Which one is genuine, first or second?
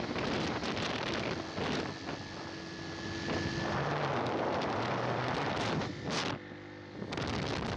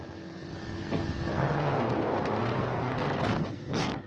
first